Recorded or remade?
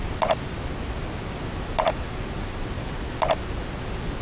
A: recorded